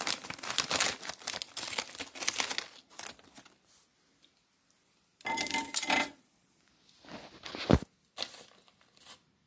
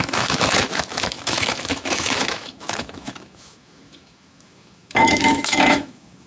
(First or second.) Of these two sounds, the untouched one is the first